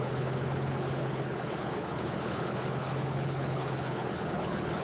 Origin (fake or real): fake